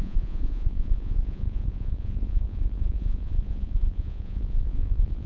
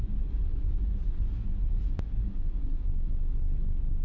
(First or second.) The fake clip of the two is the first